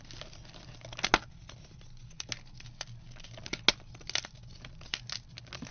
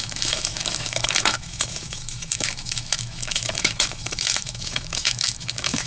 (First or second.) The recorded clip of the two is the first